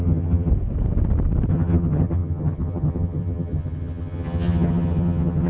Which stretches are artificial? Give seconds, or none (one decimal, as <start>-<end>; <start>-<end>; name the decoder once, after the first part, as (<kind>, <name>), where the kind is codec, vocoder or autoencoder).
0.0-0.5 (vocoder, HiFi-GAN); 1.5-5.5